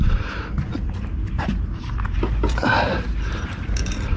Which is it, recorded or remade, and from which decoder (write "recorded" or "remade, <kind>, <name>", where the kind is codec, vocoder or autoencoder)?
remade, vocoder, BigVGAN v2